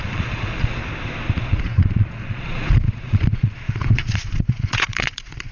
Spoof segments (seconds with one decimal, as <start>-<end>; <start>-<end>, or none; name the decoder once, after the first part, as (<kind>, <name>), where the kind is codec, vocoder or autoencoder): 0.0-0.8 (vocoder, Vocos); 1.4-5.5